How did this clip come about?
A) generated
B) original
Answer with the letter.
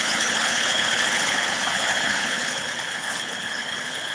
A